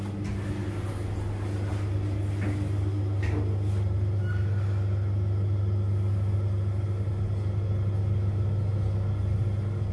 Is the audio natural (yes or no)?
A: yes